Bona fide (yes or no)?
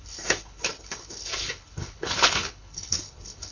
no